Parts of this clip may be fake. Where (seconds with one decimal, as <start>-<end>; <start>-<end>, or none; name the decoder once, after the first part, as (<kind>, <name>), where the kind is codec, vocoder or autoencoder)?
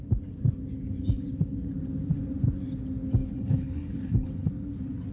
3.2-4.5 (codec, HILCodec)